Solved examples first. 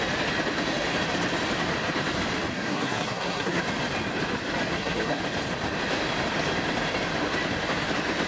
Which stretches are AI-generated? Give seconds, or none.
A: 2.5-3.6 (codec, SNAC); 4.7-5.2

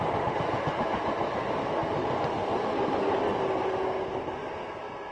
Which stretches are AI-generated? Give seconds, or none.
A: none

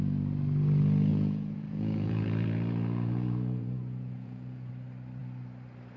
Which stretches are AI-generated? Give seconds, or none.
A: 1.1-4.7 (vocoder, Vocos)

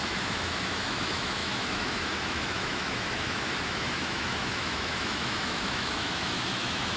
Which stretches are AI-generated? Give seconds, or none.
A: 0.0-7.0 (autoencoder, DAC-VAE)

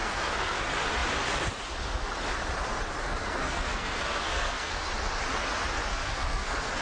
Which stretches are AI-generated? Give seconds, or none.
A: 0.0-0.6 (codec, SNAC); 3.0-4.9; 5.9-6.8

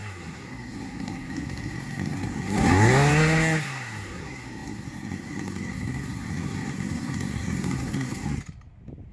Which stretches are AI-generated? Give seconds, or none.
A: 0.0-8.4 (codec, SNAC)

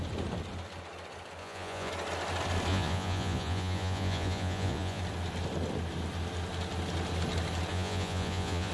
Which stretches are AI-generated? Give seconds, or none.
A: 1.4-1.9 (vocoder, Vocos); 2.7-5.0; 7.7-8.7